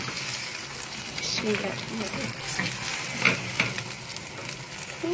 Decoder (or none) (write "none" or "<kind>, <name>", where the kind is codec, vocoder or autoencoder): none